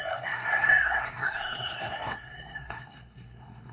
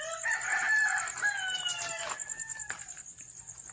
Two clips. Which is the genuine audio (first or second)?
second